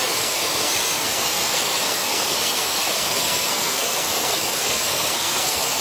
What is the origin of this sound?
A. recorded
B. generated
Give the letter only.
B